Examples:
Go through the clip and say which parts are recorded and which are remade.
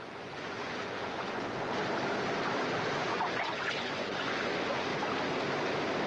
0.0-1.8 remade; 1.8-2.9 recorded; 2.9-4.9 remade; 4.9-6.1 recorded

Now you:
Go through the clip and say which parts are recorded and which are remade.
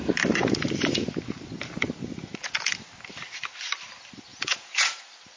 0.0-4.3 recorded; 4.3-5.0 remade; 5.0-5.4 recorded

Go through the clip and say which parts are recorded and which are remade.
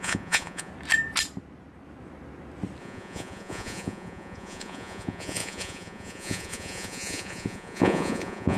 0.0-0.7 remade; 0.7-2.8 recorded; 2.8-8.6 remade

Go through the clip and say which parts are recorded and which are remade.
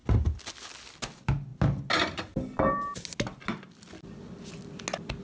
0.0-5.2 recorded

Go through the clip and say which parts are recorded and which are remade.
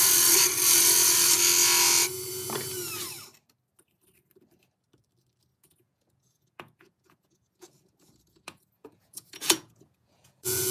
0.0-5.5 recorded; 5.5-10.7 remade